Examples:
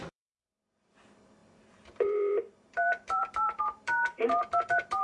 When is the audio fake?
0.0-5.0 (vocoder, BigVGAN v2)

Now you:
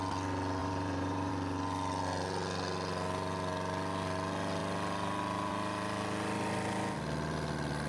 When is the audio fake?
0.6-1.3 (vocoder, BigVGAN v2)